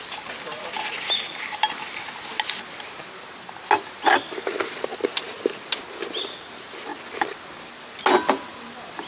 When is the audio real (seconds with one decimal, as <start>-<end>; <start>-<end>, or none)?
0.0-9.1